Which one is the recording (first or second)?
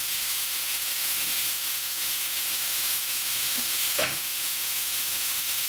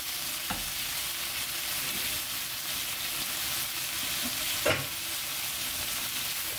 second